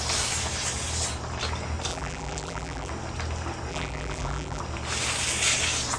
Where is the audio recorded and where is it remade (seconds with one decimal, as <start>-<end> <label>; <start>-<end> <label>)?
0.0-1.9 recorded; 1.9-2.9 remade; 2.9-3.7 recorded; 3.7-4.6 remade; 4.6-6.0 recorded